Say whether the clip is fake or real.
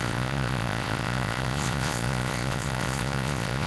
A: fake